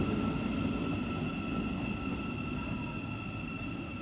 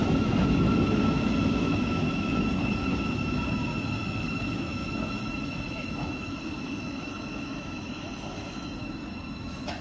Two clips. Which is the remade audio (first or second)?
second